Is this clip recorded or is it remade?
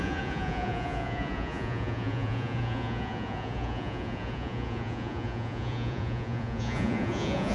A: remade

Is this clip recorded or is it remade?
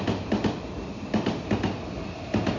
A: recorded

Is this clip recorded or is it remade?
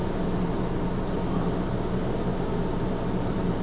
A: recorded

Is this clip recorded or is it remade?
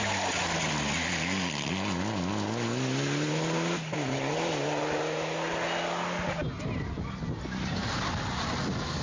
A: recorded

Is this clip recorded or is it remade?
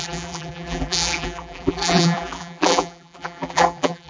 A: remade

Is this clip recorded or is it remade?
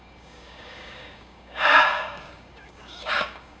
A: remade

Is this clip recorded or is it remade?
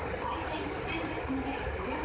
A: recorded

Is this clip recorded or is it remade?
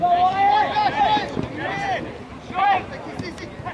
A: remade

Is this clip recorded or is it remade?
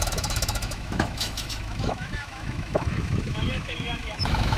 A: remade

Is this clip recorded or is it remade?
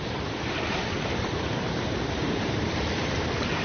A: remade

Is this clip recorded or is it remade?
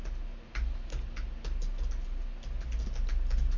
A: recorded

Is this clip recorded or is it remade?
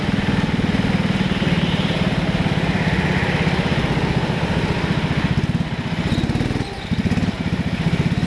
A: recorded